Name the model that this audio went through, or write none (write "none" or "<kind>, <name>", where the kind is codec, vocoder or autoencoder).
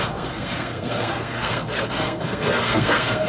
codec, SNAC